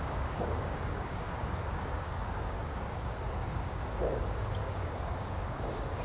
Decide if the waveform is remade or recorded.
remade